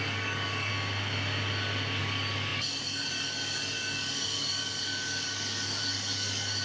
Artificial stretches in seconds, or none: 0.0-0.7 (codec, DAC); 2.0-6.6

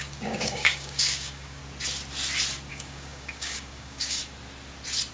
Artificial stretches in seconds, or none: 0.0-1.6 (codec, DAC); 2.7-4.2